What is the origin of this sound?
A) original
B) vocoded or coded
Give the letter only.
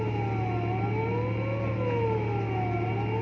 A